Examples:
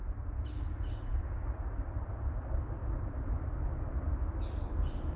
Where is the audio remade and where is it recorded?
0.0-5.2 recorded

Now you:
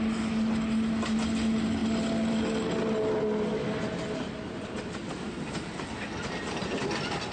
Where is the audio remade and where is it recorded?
0.0-7.3 recorded